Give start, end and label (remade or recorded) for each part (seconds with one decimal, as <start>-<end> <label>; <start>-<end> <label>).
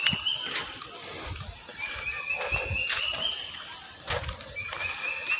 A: 0.0-5.4 recorded